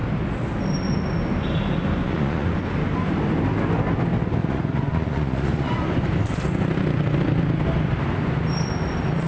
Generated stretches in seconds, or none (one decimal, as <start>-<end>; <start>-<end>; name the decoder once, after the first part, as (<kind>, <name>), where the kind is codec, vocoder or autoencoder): 2.0-2.7 (vocoder, Vocos); 4.4-6.1

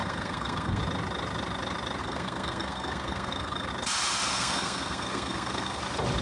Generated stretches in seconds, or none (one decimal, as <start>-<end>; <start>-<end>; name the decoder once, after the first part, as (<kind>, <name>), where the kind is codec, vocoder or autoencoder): 0.0-0.8 (codec, SNAC); 2.0-3.7; 4.3-5.8

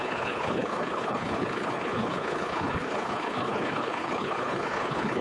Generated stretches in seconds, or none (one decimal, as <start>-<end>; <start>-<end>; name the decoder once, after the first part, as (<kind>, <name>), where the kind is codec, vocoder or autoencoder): 0.0-5.2 (codec, HILCodec)

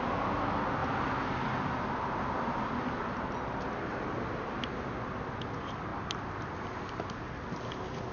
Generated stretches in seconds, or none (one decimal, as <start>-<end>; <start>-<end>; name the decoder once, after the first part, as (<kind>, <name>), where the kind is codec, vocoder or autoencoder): none